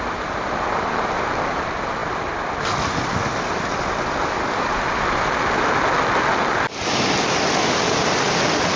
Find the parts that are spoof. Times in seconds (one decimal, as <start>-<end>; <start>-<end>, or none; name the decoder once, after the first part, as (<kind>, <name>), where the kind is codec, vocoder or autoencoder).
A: none